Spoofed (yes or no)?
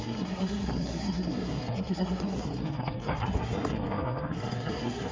yes